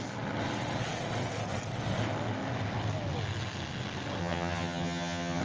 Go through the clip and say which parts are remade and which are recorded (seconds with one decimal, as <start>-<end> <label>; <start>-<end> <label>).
0.0-4.2 recorded; 4.2-5.4 remade